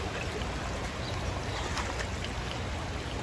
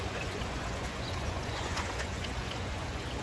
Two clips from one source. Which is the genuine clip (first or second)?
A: first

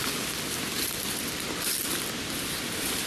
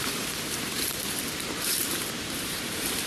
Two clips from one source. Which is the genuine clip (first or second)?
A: first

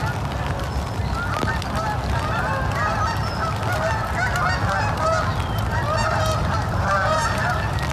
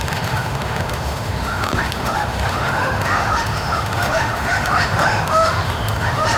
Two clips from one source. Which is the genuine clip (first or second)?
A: first